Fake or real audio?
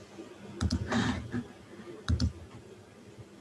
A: real